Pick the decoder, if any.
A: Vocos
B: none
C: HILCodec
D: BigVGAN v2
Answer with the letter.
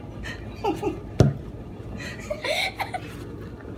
B